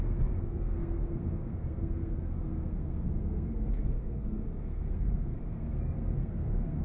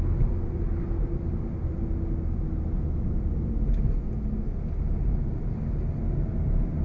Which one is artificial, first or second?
first